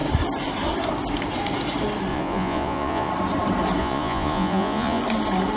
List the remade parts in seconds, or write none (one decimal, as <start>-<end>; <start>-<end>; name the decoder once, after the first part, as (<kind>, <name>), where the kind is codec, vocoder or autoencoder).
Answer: 2.1-3.1 (vocoder, Vocos); 3.8-5.0